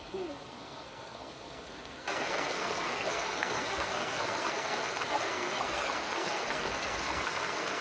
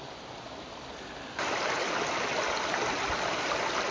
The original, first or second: second